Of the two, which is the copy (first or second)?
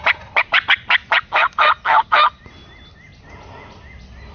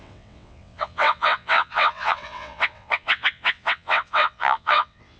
second